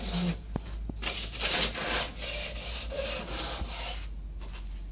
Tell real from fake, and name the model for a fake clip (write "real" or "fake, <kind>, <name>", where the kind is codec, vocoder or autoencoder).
real